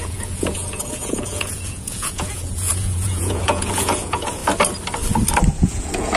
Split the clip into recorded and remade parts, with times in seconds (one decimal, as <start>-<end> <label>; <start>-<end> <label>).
0.0-4.4 remade; 4.4-5.6 recorded; 5.6-6.2 remade